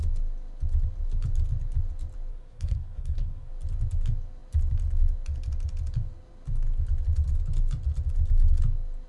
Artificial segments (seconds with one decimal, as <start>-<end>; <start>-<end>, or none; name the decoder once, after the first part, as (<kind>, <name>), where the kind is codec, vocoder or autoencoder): 2.3-3.5 (codec, SNAC)